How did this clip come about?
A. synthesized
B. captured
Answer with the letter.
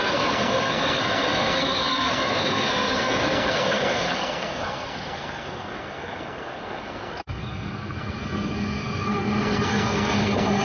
A